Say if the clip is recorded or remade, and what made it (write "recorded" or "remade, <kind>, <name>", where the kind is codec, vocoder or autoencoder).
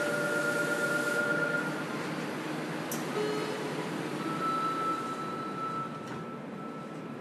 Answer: recorded